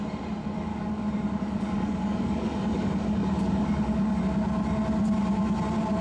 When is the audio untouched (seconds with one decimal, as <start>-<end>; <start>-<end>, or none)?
0.0-0.7; 4.2-6.0